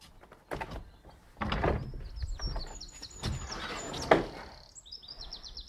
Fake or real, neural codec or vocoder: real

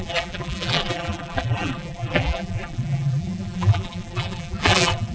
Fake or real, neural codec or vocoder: fake, vocoder, BigVGAN v2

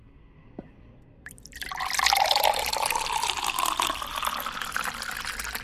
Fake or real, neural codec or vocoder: real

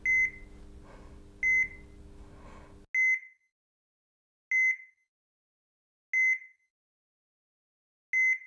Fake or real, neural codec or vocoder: real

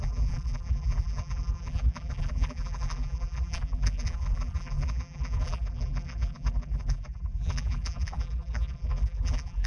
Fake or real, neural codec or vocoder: fake, vocoder, BigVGAN v2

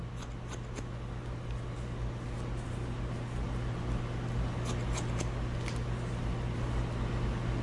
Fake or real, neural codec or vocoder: real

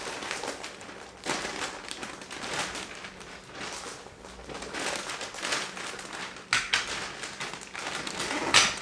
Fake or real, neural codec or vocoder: real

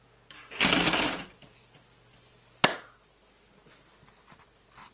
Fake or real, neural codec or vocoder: real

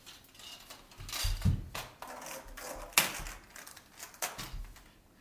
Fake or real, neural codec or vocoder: real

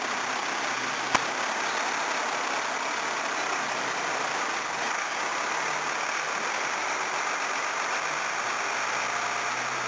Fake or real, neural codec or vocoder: real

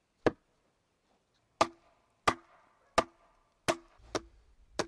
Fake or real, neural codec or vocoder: real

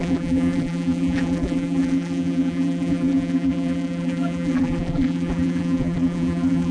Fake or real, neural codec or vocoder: fake, vocoder, BigVGAN v2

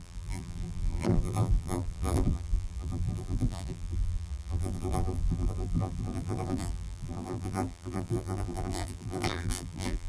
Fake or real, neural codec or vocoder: fake, vocoder, BigVGAN v2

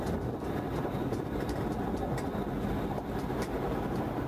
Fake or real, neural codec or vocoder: real